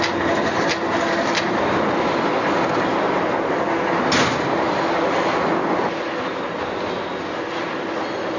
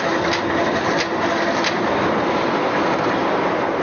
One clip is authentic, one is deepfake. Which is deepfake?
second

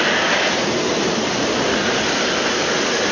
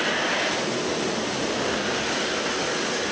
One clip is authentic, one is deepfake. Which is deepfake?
first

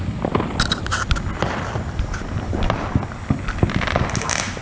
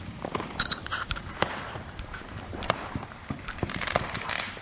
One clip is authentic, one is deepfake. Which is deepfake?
second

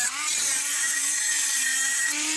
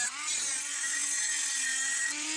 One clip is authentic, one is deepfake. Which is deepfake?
first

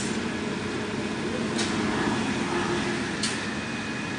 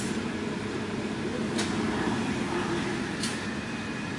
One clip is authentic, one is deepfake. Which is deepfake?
second